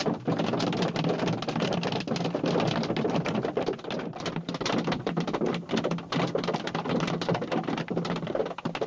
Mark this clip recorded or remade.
recorded